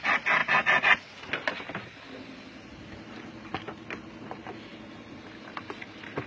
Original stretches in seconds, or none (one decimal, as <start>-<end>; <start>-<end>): 0.0-6.3

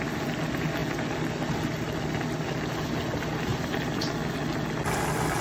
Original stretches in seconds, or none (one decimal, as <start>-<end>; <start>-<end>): 0.0-3.5; 4.1-5.4

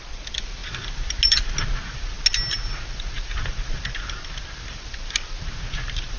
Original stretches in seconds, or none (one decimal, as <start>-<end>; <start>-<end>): 0.0-6.2